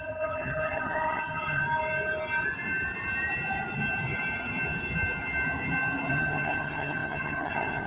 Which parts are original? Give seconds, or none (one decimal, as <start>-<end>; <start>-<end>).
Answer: 1.6-6.1